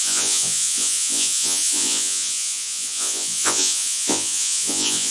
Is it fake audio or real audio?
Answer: fake